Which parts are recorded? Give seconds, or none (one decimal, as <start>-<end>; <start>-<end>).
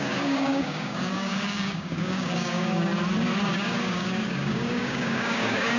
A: 2.9-3.5